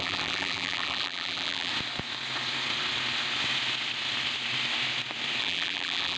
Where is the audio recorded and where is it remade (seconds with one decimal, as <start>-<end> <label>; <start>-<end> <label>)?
0.0-1.7 remade; 1.7-5.4 recorded; 5.4-6.2 remade